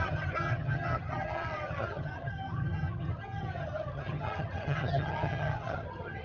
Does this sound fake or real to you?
fake